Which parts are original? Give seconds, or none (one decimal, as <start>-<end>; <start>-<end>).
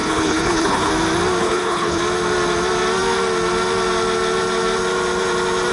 0.9-1.4; 2.0-5.7